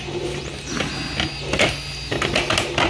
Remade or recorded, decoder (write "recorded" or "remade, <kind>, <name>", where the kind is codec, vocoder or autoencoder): recorded